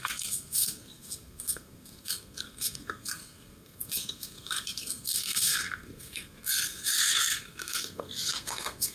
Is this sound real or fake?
fake